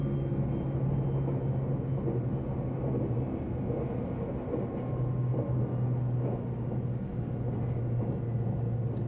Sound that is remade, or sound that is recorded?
recorded